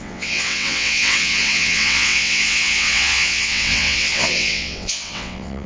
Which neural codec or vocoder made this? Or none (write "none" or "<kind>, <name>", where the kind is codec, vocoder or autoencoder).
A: vocoder, WaveNeXt